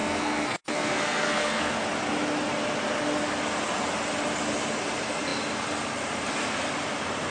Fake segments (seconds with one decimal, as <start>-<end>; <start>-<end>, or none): 0.0-1.7